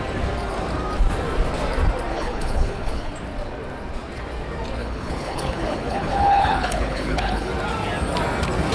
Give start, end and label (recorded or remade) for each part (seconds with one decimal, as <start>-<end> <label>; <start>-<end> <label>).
0.0-2.1 recorded; 2.1-3.1 remade; 3.1-4.8 recorded; 4.8-7.5 remade; 7.5-8.7 recorded